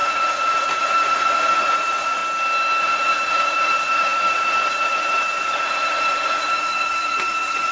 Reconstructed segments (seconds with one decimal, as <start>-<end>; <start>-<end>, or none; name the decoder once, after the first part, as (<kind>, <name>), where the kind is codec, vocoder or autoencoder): 0.0-2.2 (vocoder, Vocos); 2.8-7.7